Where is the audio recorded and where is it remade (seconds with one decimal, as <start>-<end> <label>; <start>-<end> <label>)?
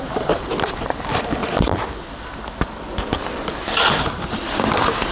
0.0-1.4 remade; 1.4-2.0 recorded; 2.0-5.1 remade